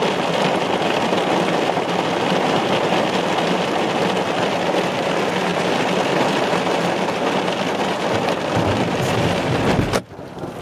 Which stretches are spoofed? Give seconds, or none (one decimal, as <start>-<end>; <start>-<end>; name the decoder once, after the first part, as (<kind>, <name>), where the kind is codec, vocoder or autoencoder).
none